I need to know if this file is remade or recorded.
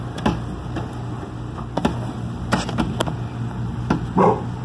recorded